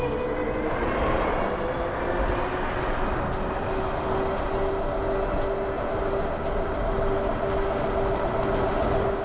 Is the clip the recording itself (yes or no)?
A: yes